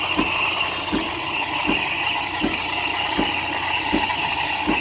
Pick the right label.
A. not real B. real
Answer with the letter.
B